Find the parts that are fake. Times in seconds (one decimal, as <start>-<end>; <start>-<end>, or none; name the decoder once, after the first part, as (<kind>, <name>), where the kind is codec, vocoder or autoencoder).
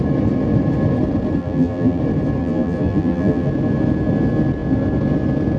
1.4-2.0 (vocoder, BigVGAN v2); 2.4-3.5